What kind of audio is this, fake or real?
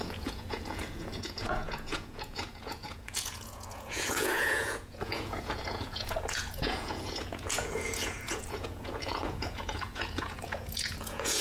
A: fake